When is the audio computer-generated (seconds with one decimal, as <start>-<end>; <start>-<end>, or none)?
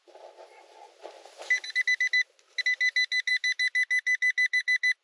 none